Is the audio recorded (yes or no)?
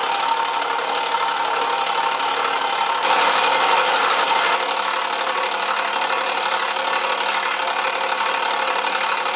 yes